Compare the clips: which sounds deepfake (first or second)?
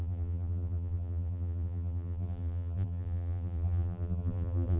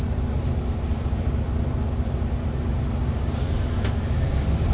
first